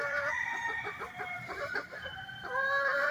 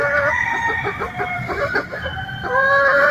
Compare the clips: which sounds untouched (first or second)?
second